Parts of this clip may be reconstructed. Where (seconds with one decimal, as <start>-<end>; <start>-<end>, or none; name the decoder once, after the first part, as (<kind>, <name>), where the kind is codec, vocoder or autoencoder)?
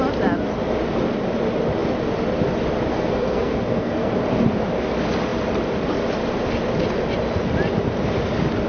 2.9-4.1 (codec, SNAC)